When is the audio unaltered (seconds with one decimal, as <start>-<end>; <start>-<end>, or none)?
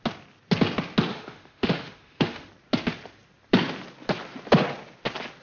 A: 0.0-1.1; 2.5-5.4